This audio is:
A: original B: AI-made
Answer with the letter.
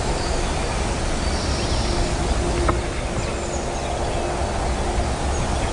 A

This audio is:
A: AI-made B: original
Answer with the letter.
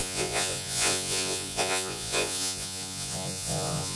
A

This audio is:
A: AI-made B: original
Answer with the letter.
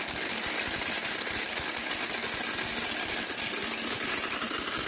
B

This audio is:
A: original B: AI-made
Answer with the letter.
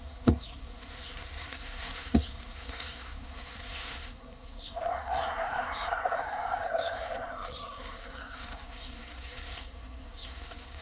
B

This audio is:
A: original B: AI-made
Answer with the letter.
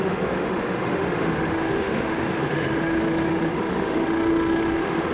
B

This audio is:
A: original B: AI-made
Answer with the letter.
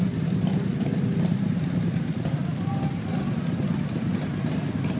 A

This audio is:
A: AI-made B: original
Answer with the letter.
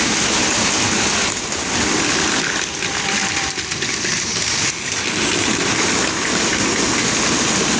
B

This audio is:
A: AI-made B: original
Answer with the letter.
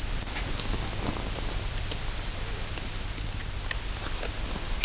B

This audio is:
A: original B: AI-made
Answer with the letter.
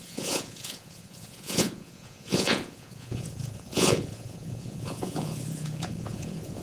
B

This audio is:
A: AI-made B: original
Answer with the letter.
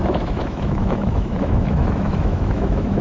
A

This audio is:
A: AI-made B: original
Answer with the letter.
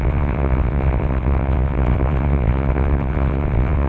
A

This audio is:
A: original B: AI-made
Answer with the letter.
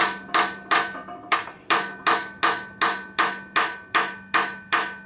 A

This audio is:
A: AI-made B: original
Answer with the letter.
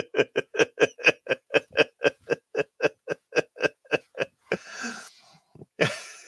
A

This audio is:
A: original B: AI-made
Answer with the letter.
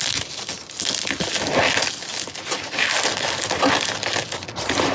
A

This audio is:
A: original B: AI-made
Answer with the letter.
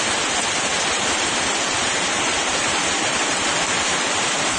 A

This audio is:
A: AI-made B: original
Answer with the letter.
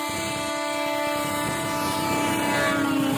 B